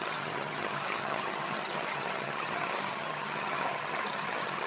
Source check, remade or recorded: remade